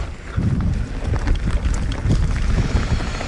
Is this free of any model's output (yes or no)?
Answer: yes